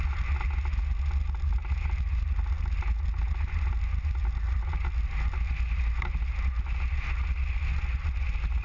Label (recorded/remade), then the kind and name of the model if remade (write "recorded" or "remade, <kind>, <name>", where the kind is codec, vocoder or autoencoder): recorded